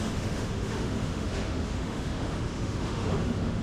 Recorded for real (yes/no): no